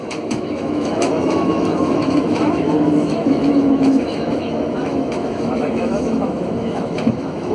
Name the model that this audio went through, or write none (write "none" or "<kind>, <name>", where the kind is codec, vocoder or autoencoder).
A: autoencoder, DAC-VAE